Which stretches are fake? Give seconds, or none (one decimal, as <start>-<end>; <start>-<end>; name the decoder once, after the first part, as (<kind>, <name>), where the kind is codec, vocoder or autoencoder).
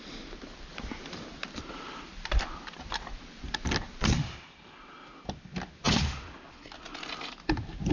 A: none